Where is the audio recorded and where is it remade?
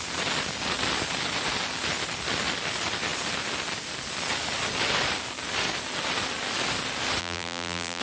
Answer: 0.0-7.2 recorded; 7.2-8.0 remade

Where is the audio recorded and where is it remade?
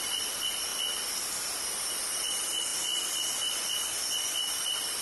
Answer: 0.0-0.7 remade; 0.7-1.9 recorded; 1.9-5.0 remade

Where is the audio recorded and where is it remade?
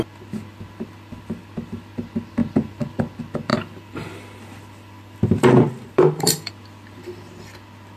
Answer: 0.0-3.5 recorded; 3.5-6.5 remade; 6.5-8.0 recorded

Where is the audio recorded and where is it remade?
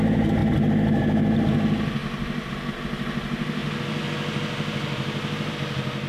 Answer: 0.0-6.1 recorded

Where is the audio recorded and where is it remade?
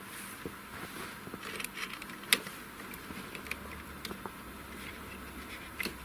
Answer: 0.0-6.0 recorded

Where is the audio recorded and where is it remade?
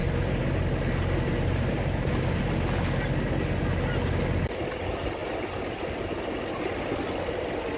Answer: 0.0-2.4 remade; 2.4-7.8 recorded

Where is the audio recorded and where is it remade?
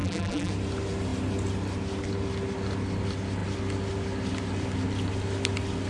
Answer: 0.0-0.5 remade; 0.5-5.9 recorded